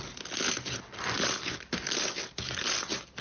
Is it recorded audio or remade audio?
recorded